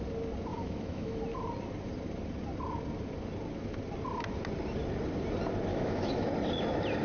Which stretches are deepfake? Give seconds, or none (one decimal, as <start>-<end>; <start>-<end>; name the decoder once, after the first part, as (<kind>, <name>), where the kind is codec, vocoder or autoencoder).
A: 0.5-1.2 (autoencoder, DAC-VAE); 5.7-6.3